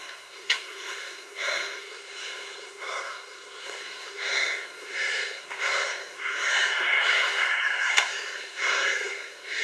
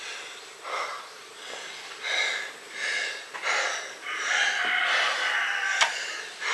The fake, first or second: first